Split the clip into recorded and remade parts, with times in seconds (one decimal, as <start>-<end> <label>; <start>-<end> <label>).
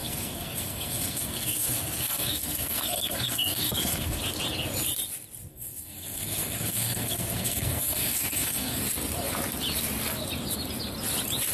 0.0-4.2 remade; 4.2-5.5 recorded; 5.5-8.8 remade; 8.8-11.5 recorded